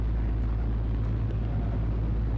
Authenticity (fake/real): real